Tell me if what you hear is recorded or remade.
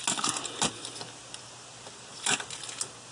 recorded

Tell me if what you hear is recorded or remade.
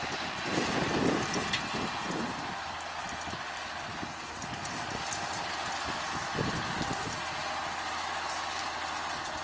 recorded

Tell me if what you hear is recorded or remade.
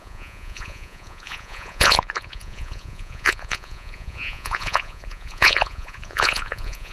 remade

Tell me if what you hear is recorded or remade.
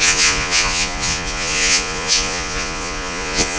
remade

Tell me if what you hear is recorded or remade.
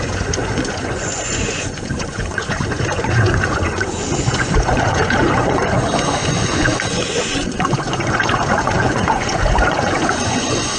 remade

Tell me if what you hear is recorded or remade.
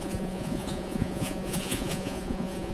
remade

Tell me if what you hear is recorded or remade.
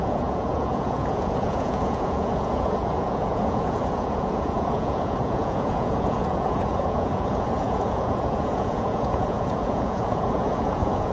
remade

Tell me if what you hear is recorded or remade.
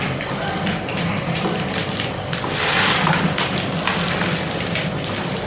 recorded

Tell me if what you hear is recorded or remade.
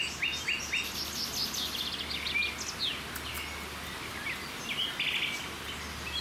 recorded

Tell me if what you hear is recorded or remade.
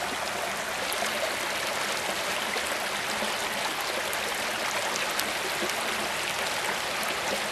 recorded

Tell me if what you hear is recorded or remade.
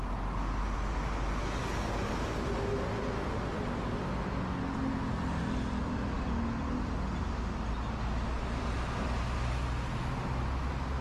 recorded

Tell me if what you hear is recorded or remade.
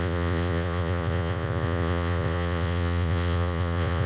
remade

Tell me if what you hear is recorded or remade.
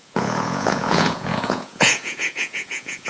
remade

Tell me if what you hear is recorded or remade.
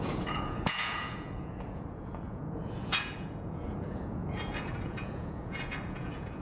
remade